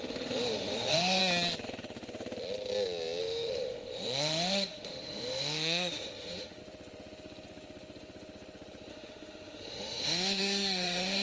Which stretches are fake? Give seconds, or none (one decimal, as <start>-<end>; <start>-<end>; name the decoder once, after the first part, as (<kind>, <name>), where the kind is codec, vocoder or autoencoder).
0.0-1.2 (autoencoder, DAC-VAE); 3.2-6.6; 8.9-11.2